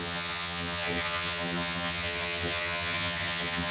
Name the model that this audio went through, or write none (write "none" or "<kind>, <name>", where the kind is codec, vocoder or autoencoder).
vocoder, HiFi-GAN